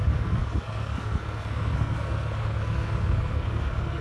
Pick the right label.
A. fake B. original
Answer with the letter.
A